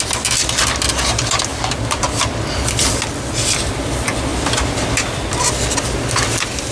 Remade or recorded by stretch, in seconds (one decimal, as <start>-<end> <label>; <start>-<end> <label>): 0.0-4.3 recorded; 4.3-5.4 remade; 5.4-6.7 recorded